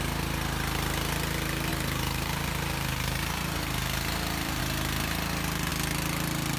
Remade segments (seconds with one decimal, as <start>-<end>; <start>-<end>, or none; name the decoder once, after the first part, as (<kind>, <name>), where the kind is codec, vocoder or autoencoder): 1.7-4.6 (vocoder, BigVGAN v2)